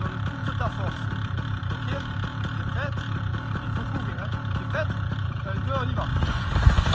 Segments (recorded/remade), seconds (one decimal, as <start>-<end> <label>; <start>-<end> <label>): 0.0-6.1 recorded; 6.1-6.9 remade